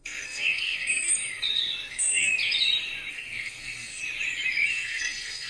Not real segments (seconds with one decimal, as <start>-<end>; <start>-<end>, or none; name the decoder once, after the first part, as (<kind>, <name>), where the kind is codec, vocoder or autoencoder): 0.0-1.1 (codec, SNAC); 1.9-2.3; 3.1-4.0; 4.7-5.5